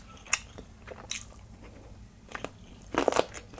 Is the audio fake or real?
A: real